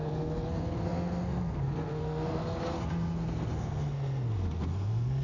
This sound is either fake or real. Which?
fake